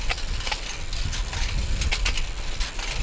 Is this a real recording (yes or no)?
yes